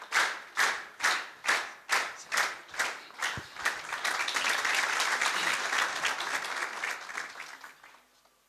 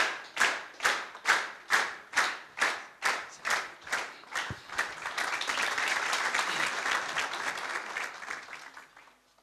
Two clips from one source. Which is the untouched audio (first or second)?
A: first